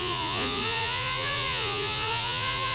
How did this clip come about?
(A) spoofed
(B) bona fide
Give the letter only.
A